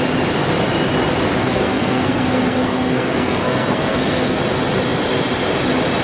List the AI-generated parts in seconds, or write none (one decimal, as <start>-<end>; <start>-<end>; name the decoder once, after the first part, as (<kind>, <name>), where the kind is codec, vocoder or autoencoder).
1.4-4.4 (codec, SNAC)